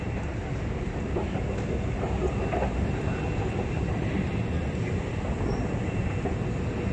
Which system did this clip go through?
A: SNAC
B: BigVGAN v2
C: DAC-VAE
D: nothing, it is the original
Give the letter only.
D